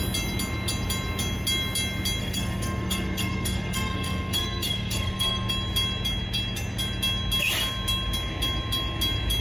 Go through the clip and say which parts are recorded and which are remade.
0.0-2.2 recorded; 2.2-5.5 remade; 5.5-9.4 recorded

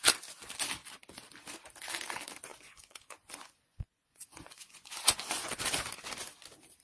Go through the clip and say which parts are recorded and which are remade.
0.0-2.5 recorded; 2.5-5.5 remade; 5.5-6.8 recorded